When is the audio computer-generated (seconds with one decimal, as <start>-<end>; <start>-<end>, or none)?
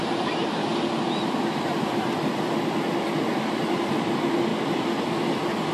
none